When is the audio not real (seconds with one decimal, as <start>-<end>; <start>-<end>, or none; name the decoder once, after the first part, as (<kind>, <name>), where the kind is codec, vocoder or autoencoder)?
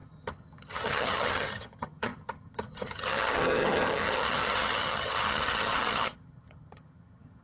0.0-7.4 (vocoder, HiFi-GAN)